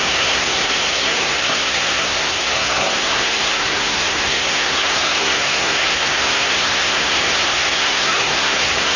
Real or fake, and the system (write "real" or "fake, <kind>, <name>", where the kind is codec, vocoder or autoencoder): fake, codec, SNAC